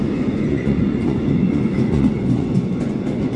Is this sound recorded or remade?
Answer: remade